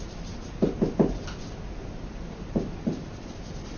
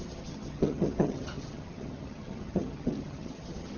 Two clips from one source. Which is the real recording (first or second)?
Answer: first